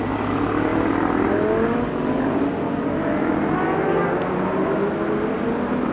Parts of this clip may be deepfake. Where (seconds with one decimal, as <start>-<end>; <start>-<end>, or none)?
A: none